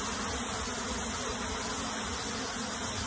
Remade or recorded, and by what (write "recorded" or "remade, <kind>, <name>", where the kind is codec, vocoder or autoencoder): recorded